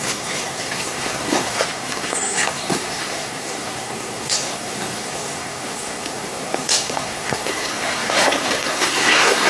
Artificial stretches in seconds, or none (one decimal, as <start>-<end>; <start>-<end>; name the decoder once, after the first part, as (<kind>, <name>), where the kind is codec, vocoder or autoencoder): 0.0-9.5 (codec, SNAC)